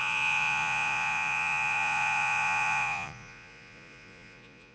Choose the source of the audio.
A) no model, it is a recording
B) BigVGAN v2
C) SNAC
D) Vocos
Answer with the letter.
D